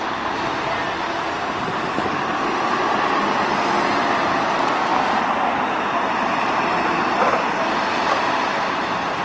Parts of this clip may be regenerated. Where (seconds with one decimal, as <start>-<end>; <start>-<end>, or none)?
none